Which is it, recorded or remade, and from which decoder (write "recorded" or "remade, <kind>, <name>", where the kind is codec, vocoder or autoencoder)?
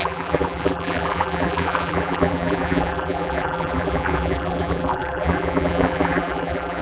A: remade, vocoder, BigVGAN v2